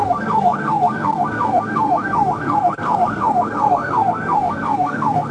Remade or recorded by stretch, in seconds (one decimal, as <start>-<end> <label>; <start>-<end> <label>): 0.0-5.3 remade

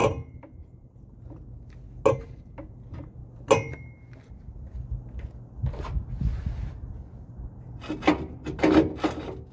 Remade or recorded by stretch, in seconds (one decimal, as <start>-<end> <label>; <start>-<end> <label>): 0.0-9.5 recorded